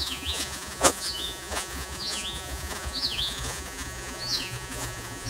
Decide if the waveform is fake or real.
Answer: fake